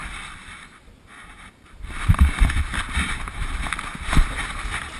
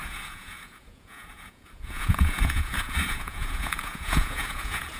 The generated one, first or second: second